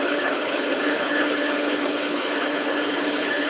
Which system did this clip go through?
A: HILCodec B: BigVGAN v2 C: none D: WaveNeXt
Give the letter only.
A